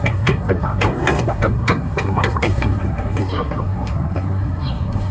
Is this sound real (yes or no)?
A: no